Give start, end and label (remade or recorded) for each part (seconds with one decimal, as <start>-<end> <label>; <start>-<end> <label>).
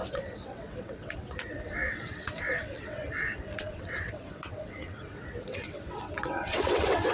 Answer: 0.0-7.1 remade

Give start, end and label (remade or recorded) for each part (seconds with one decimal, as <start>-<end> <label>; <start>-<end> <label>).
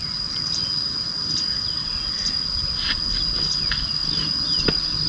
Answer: 0.0-5.1 recorded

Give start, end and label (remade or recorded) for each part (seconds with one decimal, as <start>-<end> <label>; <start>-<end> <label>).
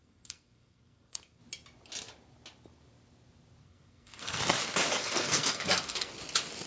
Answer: 0.0-1.4 remade; 1.4-3.6 recorded; 3.6-4.4 remade; 4.4-4.9 recorded; 4.9-6.1 remade; 6.1-6.7 recorded